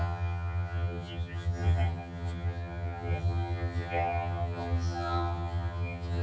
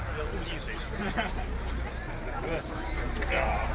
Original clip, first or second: second